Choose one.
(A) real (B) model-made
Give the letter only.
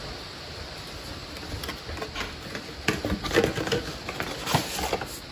A